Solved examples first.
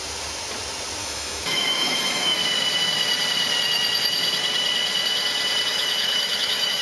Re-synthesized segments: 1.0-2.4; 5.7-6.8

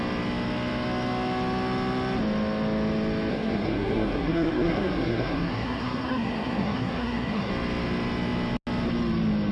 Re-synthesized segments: 3.3-7.5

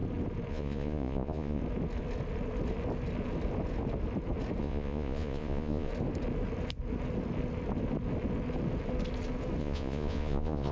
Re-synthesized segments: 0.5-1.6; 4.6-5.9; 9.6-10.7

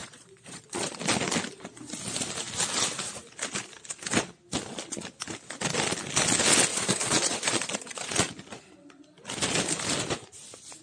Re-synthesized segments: 0.0-1.0; 6.7-8.3

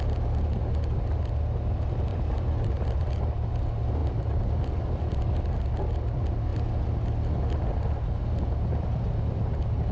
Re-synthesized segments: 2.1-3.0; 4.0-5.3

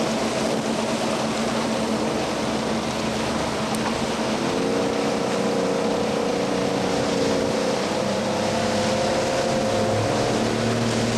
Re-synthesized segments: none